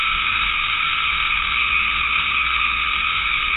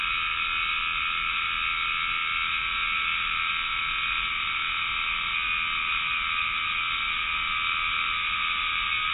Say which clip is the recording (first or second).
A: second